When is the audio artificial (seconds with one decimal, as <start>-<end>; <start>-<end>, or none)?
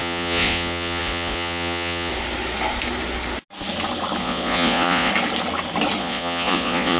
0.0-2.1; 4.2-5.1; 6.0-7.0